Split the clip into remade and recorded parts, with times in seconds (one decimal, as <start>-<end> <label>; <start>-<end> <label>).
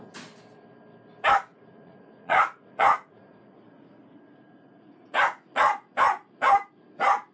0.0-1.5 recorded; 1.5-5.9 remade; 5.9-7.3 recorded